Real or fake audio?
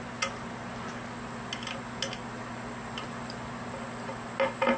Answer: real